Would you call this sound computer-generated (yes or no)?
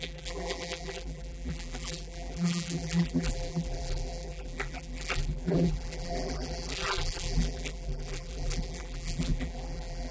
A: yes